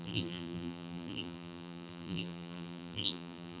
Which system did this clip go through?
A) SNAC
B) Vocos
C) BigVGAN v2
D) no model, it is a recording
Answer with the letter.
C